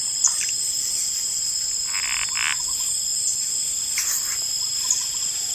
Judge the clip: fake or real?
real